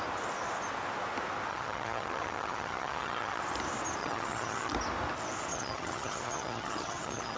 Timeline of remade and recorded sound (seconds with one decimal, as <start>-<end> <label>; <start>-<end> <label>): 0.0-1.5 recorded; 1.5-3.4 remade; 3.4-4.0 recorded; 4.0-4.7 remade; 4.7-5.5 recorded; 5.5-7.4 remade